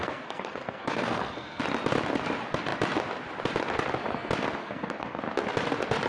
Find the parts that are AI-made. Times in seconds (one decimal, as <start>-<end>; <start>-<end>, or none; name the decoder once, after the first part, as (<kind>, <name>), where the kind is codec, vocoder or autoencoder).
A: 0.0-1.6 (codec, SNAC); 4.6-5.2